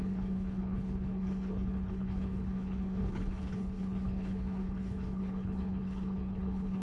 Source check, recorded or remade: remade